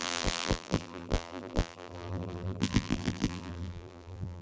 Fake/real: fake